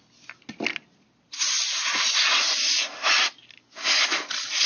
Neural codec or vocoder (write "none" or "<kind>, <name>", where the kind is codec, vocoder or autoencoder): none